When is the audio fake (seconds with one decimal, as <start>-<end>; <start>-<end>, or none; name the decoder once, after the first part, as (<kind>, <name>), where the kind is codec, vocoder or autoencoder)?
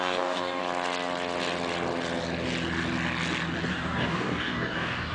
0.0-0.6 (codec, DAC); 3.7-5.1